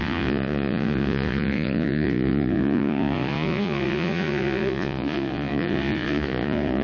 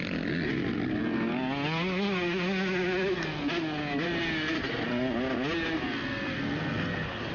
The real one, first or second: second